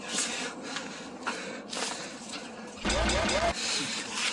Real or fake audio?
real